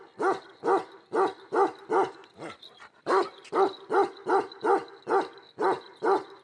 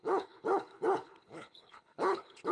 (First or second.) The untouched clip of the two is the first